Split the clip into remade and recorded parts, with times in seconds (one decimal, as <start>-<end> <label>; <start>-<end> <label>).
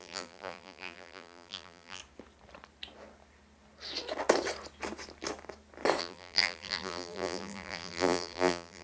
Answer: 0.0-2.0 remade; 2.0-6.0 recorded; 6.0-8.8 remade